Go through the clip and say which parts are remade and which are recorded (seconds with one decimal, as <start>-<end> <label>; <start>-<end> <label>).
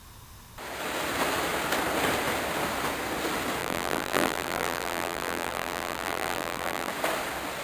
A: 0.0-3.6 recorded; 3.6-6.9 remade; 6.9-7.6 recorded